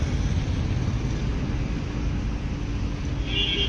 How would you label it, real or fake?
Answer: real